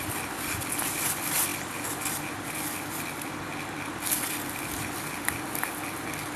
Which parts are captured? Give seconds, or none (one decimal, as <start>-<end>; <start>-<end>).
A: 0.0-6.4